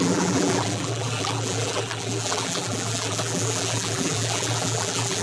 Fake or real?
fake